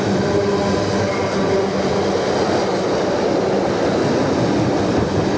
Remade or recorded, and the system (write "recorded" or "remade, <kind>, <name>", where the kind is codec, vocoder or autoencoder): recorded